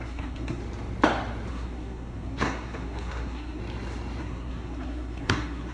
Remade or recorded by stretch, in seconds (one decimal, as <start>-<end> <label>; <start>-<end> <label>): 0.0-0.6 remade; 0.6-1.5 recorded; 1.5-3.6 remade; 3.6-4.2 recorded; 4.2-5.7 remade